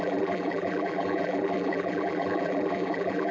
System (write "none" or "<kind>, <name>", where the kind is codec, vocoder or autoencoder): vocoder, BigVGAN v2